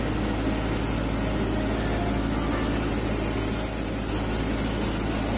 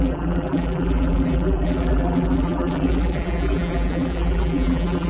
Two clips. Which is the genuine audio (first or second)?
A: first